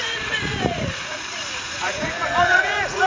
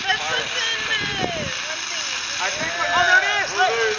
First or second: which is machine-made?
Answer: first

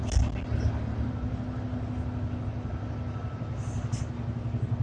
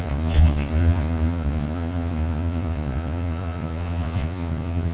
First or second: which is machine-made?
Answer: second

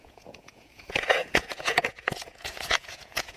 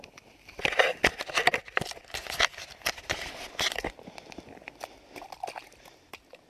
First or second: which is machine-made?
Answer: first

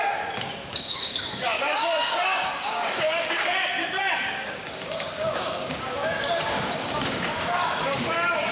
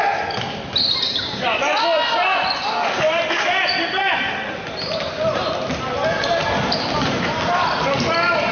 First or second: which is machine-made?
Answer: first